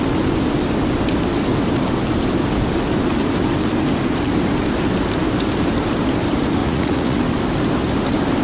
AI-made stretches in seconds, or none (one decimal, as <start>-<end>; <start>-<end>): 6.6-7.2